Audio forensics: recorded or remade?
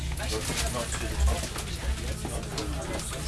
recorded